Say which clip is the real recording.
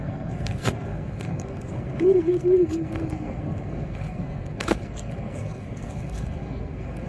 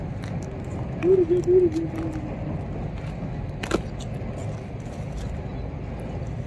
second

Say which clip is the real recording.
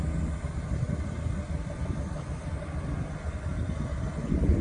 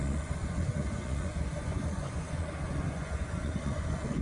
first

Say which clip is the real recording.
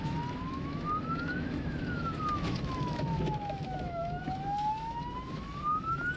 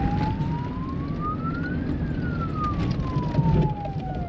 second